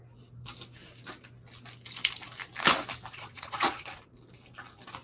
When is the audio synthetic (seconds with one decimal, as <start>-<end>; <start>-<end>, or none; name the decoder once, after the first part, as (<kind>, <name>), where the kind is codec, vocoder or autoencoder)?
3.1-4.0 (vocoder, Vocos)